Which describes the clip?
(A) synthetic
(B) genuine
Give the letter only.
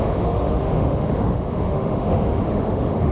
A